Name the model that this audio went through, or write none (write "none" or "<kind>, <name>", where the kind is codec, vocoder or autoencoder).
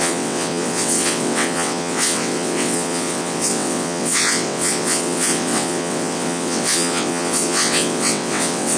vocoder, WaveNeXt